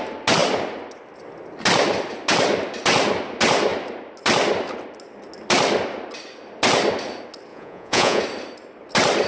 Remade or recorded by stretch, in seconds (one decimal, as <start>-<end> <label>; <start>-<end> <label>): 0.0-7.5 recorded; 7.5-8.2 remade; 8.2-9.3 recorded